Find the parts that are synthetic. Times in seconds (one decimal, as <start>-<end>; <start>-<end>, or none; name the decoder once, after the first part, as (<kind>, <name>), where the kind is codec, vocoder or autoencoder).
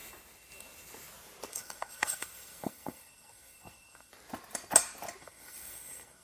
1.5-4.1 (codec, SNAC); 5.2-6.2